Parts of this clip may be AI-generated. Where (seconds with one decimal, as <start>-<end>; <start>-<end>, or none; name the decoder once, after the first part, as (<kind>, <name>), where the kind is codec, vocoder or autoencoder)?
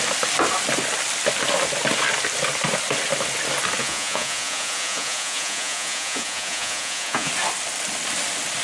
3.8-7.3 (vocoder, Vocos)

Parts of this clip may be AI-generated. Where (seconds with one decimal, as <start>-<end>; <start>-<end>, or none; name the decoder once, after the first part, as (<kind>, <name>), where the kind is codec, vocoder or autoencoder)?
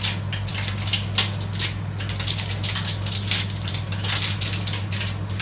none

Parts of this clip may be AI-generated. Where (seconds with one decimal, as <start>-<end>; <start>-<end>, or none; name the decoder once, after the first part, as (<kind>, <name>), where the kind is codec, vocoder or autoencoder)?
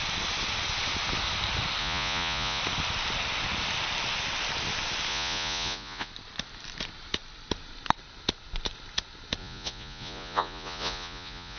1.8-2.6 (vocoder, Vocos); 5.1-6.1; 9.4-11.6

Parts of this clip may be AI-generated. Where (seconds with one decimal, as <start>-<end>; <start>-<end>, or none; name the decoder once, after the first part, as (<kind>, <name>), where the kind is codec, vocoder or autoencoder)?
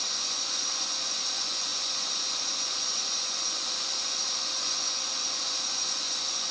0.0-6.5 (vocoder, Vocos)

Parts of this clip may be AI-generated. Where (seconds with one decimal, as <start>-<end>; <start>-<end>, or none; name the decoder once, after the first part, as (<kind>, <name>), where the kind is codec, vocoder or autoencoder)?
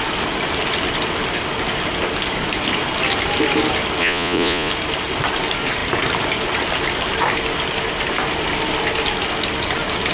4.0-4.7 (vocoder, Vocos)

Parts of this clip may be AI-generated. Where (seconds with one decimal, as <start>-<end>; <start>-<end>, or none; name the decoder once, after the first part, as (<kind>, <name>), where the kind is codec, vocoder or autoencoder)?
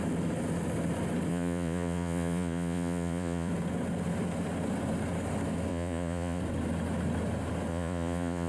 1.3-3.5 (vocoder, Vocos); 5.7-6.4; 7.7-8.5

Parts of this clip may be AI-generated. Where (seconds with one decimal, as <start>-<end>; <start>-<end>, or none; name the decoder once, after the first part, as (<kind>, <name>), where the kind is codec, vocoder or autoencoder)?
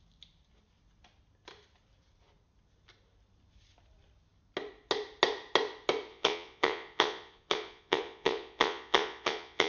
6.1-9.7 (vocoder, Vocos)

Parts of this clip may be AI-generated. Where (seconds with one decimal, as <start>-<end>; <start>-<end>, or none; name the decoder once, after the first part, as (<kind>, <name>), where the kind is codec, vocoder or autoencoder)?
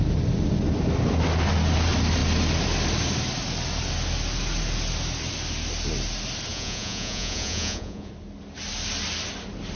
6.5-8.1 (vocoder, Vocos)